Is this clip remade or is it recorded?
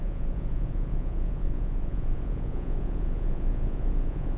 remade